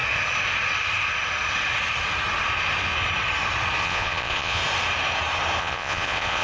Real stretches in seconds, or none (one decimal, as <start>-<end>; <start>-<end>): 0.0-3.8; 4.6-5.6